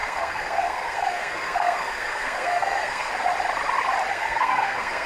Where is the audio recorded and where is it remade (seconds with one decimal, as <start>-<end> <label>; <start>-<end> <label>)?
0.0-3.1 remade; 3.1-4.1 recorded; 4.1-5.1 remade